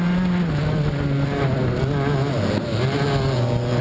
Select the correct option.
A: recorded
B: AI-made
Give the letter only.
A